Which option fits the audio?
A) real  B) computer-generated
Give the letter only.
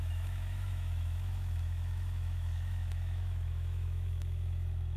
B